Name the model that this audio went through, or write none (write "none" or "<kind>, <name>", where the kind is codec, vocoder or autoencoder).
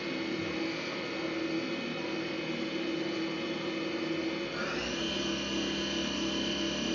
none